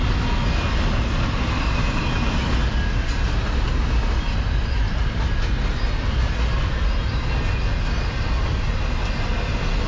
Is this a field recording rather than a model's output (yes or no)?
yes